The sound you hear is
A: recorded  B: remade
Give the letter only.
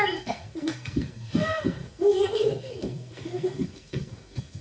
B